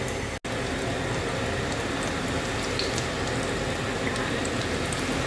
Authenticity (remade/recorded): recorded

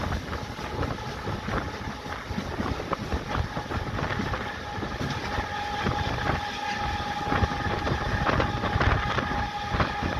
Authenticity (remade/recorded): recorded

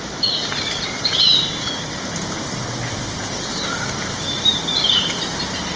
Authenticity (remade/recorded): recorded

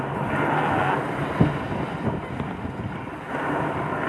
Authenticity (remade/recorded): recorded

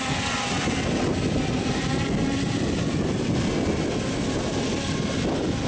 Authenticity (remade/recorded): recorded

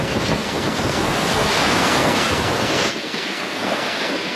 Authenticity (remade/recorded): remade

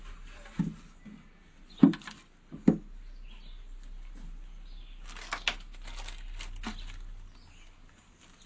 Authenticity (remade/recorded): recorded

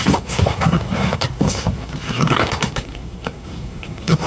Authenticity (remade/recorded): remade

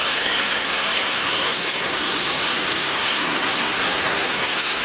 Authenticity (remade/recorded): remade